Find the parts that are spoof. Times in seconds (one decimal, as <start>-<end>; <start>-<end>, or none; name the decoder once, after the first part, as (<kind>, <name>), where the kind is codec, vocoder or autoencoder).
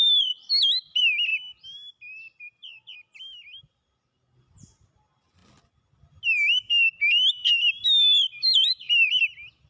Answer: 8.4-9.2 (vocoder, BigVGAN v2)